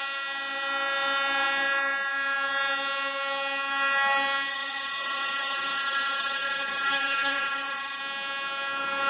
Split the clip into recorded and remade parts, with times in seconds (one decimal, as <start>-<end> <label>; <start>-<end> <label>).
0.0-4.5 recorded; 4.5-8.0 remade; 8.0-9.1 recorded